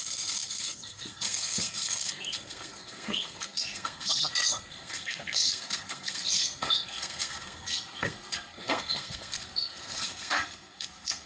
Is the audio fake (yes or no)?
yes